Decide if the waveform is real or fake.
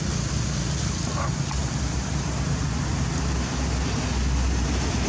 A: real